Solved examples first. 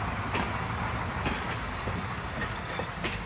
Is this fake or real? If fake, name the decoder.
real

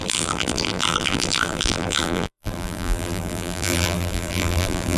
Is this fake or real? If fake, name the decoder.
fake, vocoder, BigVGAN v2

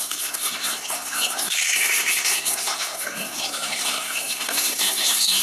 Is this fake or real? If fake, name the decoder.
fake, codec, SNAC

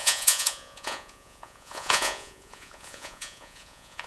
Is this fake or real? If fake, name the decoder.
fake, vocoder, Vocos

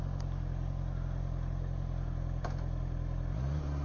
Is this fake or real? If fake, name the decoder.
real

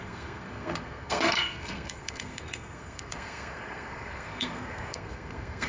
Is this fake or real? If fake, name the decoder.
fake, codec, SNAC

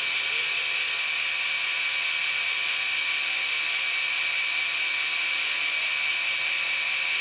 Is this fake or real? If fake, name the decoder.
real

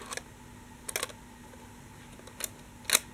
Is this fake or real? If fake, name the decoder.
real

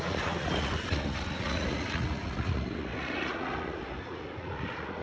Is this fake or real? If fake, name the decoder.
fake, vocoder, Vocos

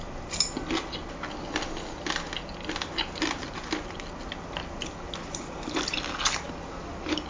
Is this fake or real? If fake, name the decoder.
real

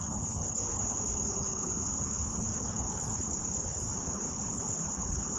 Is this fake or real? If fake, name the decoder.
fake, codec, HILCodec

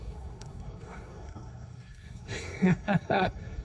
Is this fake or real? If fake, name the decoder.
fake, codec, SNAC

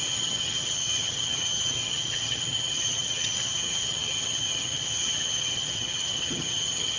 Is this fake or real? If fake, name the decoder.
fake, vocoder, HiFi-GAN